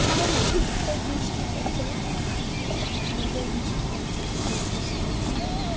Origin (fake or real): real